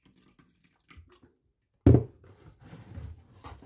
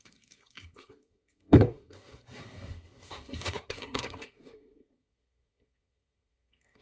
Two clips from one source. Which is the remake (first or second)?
second